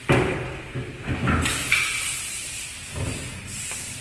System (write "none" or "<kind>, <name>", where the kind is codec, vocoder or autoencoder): none